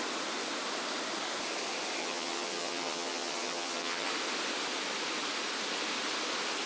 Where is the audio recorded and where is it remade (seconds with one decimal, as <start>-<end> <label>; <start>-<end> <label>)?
0.0-2.0 recorded; 2.0-4.1 remade; 4.1-6.7 recorded